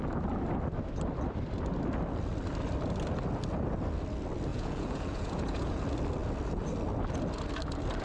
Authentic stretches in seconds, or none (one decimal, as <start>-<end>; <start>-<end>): 0.0-4.5; 5.8-8.0